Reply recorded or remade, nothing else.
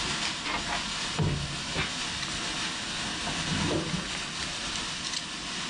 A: recorded